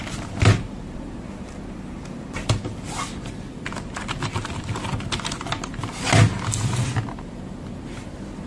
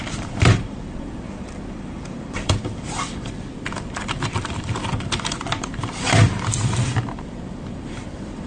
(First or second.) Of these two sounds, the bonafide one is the first